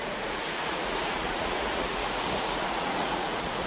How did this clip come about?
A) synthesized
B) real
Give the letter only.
A